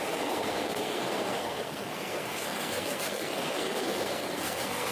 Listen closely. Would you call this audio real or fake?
fake